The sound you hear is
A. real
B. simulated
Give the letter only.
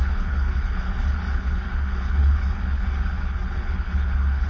B